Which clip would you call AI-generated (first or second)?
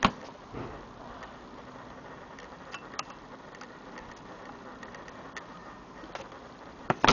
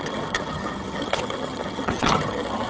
second